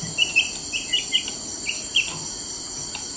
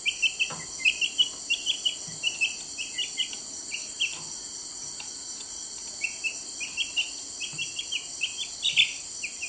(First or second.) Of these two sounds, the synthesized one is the first